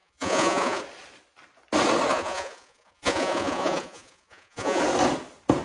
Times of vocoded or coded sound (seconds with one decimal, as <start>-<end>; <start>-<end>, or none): 0.0-0.8; 2.1-4.8